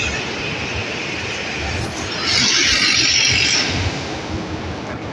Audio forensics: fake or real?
real